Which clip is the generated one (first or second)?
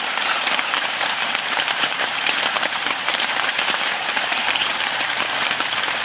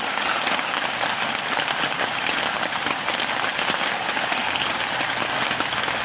first